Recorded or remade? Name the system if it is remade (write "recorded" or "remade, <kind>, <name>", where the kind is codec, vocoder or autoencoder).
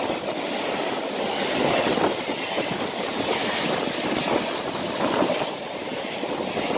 recorded